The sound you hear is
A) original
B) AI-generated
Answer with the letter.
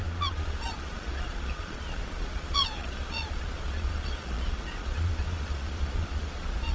B